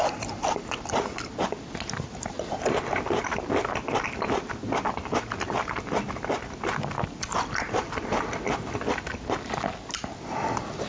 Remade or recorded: recorded